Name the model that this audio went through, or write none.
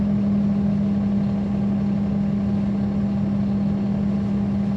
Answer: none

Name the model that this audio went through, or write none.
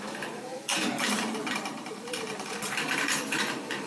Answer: vocoder, BigVGAN v2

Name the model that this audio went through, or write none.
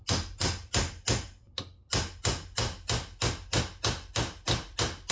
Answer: none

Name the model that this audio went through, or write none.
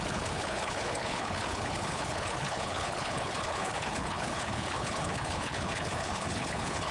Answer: codec, HILCodec